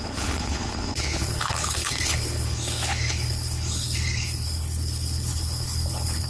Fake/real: fake